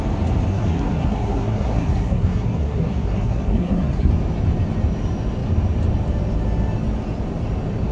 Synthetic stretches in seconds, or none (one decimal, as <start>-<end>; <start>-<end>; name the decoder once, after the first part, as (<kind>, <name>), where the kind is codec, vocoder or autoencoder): 0.5-4.1 (codec, SNAC)